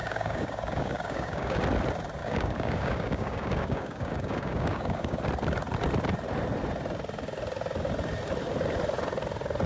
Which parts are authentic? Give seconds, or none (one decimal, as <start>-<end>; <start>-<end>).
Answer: 1.6-2.2; 5.2-9.7